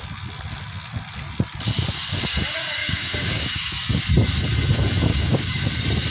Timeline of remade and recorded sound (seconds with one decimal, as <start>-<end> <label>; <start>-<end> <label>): 0.0-2.8 recorded; 2.8-3.7 remade; 3.7-5.1 recorded; 5.1-5.6 remade; 5.6-6.1 recorded